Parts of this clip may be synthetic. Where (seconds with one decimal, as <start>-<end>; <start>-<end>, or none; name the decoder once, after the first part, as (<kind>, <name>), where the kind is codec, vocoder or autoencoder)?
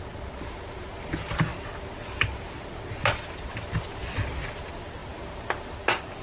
none